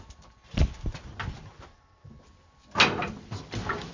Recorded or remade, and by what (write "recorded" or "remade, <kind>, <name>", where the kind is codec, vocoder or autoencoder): recorded